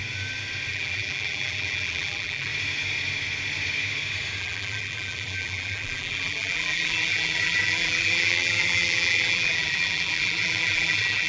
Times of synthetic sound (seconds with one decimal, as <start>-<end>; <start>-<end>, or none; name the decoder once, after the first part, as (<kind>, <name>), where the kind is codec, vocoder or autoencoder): 0.7-2.5 (vocoder, BigVGAN v2); 4.4-11.3